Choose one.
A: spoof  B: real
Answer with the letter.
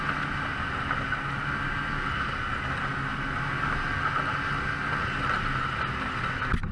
B